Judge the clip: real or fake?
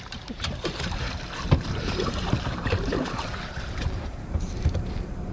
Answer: fake